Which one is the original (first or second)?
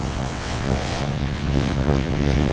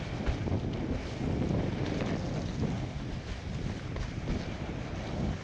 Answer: second